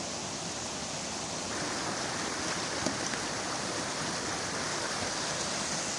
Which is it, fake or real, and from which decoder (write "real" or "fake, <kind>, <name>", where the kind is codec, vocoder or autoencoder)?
real